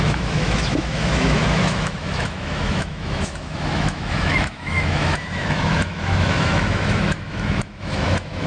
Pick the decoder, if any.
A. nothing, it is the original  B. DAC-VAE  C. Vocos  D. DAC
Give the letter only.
B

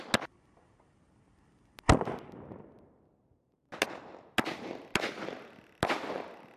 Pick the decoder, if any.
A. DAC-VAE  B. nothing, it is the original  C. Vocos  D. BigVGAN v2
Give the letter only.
B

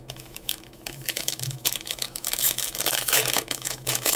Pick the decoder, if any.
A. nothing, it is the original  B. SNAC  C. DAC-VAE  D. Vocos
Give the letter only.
C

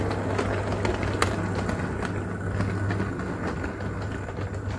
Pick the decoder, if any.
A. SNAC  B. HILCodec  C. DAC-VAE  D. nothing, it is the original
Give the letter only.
D